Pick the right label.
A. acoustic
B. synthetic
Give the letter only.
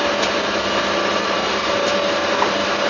A